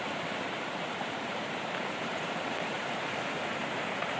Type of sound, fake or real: fake